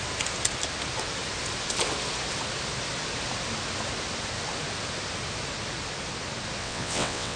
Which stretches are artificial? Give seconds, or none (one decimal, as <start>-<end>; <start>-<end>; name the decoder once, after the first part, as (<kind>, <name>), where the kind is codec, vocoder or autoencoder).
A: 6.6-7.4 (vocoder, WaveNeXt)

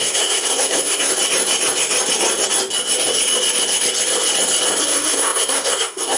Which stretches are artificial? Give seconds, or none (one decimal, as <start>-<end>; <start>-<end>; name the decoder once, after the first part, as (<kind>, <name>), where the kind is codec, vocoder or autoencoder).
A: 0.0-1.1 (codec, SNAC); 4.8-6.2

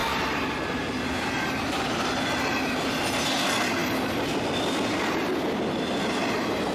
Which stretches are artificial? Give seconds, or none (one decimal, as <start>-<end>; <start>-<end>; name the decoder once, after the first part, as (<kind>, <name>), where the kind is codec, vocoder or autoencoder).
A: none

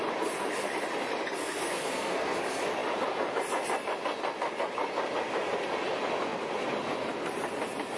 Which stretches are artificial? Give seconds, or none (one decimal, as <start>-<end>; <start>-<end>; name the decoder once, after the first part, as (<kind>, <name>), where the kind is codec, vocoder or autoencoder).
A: 1.4-2.4 (codec, SNAC)

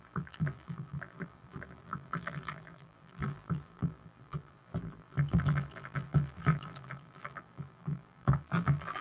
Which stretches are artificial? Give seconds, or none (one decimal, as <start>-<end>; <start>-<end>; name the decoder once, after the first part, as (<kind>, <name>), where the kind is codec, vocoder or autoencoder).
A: 0.0-9.0 (vocoder, BigVGAN v2)